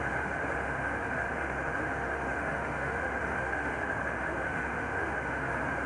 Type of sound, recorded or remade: remade